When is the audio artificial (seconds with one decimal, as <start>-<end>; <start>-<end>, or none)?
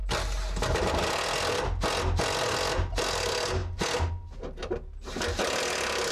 none